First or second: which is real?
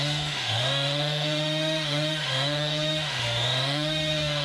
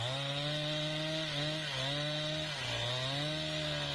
second